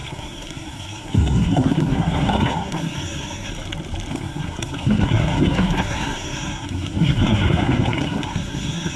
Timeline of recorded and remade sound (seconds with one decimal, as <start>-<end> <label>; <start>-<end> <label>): 0.0-3.5 remade; 3.5-4.1 recorded; 4.1-9.0 remade